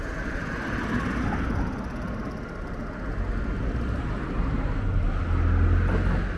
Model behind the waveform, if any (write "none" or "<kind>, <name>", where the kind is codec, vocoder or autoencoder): none